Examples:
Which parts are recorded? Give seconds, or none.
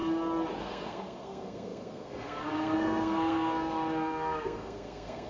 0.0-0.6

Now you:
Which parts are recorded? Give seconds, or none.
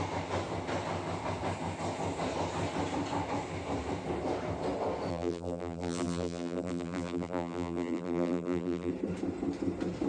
0.0-5.1; 8.9-10.1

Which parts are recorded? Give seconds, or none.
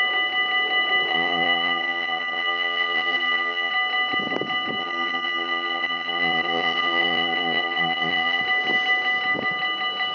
0.0-1.1; 3.7-4.8; 8.4-10.1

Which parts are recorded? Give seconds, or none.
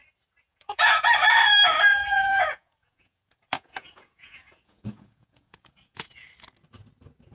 0.0-0.5; 1.1-1.9; 6.3-7.3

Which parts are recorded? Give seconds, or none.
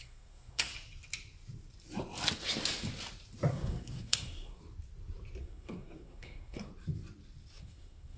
0.7-3.5; 4.6-5.4; 6.7-7.6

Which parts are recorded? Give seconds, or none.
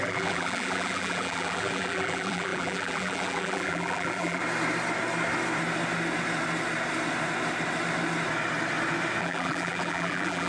4.4-9.2